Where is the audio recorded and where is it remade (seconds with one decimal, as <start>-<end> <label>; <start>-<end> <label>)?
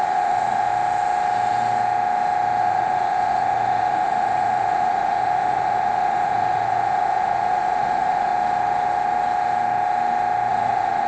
0.0-0.7 remade; 0.7-2.6 recorded; 2.6-8.3 remade; 8.3-10.5 recorded; 10.5-11.1 remade